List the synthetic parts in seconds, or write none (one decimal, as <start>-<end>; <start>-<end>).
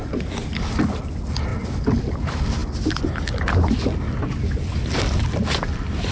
none